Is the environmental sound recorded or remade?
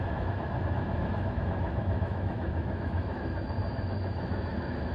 remade